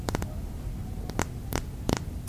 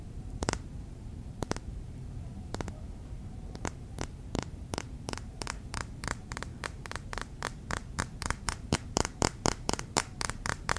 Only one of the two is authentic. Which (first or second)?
first